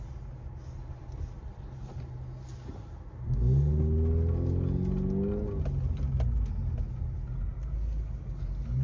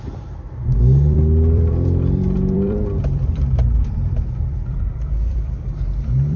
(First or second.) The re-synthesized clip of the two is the second